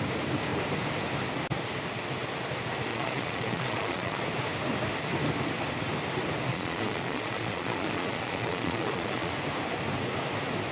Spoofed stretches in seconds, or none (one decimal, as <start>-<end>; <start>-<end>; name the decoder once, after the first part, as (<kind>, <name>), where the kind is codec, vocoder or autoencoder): 2.9-4.2 (vocoder, Vocos); 6.5-9.3